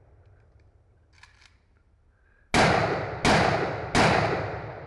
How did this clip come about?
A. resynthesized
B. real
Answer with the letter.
B